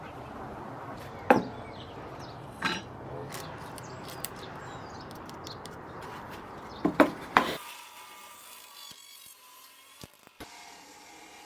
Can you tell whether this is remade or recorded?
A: remade